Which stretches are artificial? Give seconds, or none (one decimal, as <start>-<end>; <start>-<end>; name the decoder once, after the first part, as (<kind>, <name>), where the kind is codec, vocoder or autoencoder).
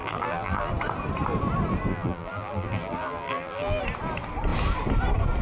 0.0-0.7 (vocoder, BigVGAN v2); 1.9-3.8